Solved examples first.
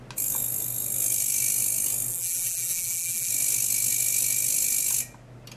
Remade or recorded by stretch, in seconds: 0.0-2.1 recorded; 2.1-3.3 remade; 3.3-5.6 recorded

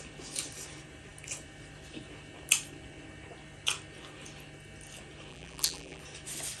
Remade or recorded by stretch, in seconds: 0.0-5.3 recorded; 5.3-6.0 remade; 6.0-6.6 recorded